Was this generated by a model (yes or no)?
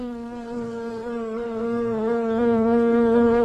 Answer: yes